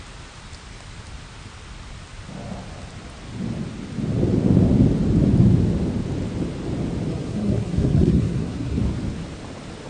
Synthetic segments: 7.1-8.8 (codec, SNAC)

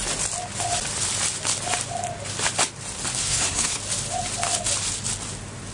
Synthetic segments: 3.2-3.8 (codec, SNAC)

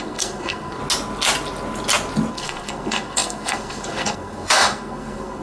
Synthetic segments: 0.0-0.8 (codec, SNAC); 2.3-5.4

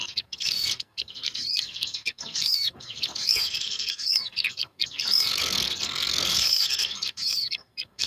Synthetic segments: 0.0-8.1 (codec, SNAC)

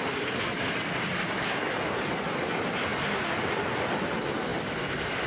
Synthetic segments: none

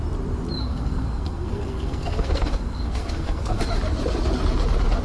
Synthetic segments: 0.6-3.6 (codec, SNAC)

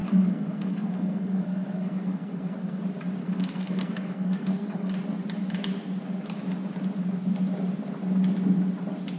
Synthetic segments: 0.0-2.8 (codec, SNAC); 3.2-4.9